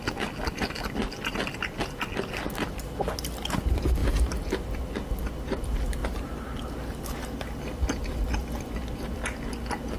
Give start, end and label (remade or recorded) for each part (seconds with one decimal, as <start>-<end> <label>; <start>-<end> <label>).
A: 0.0-4.0 recorded; 4.0-4.7 remade; 4.7-6.0 recorded; 6.0-6.5 remade; 6.5-10.0 recorded